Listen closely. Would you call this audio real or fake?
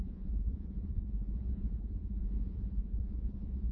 fake